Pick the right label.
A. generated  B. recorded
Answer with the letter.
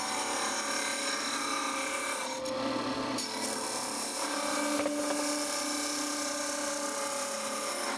A